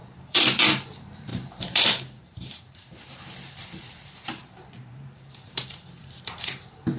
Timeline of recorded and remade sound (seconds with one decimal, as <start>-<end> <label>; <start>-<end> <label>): 0.0-7.0 remade